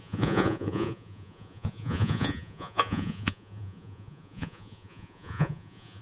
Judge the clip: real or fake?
fake